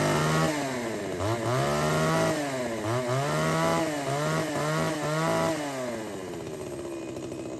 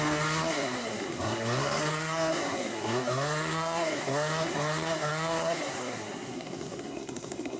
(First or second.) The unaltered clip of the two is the first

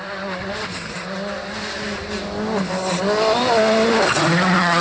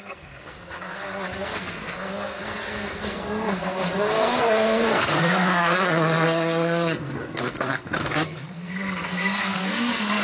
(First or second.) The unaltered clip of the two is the first